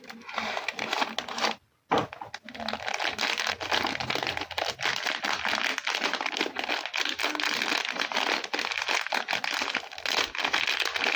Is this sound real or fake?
real